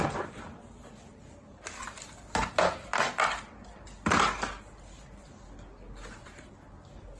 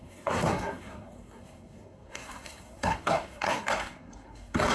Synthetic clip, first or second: second